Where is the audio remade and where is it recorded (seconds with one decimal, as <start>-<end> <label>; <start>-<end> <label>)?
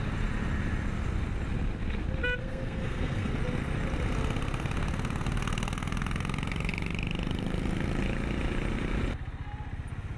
0.0-2.4 recorded; 2.4-3.3 remade; 3.3-10.2 recorded